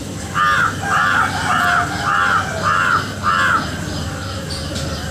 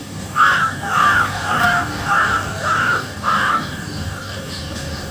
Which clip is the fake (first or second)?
second